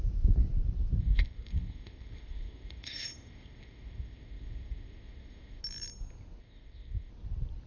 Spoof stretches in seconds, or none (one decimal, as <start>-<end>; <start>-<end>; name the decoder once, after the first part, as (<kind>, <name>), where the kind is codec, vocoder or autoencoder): 1.0-5.6 (codec, ZipCodec); 6.4-7.1